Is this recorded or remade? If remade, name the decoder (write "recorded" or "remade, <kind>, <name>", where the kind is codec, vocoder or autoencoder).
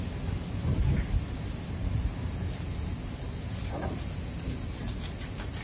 recorded